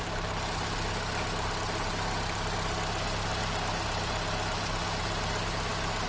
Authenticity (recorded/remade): recorded